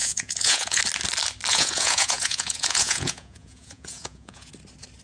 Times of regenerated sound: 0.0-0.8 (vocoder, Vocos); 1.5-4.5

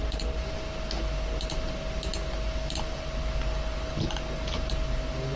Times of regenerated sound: none

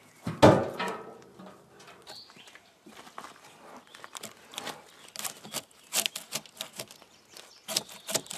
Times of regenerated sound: none

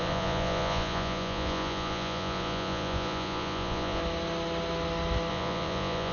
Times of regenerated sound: 0.0-4.0 (vocoder, Vocos); 5.3-6.1